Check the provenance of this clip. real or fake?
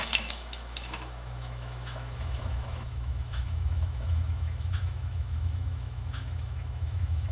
fake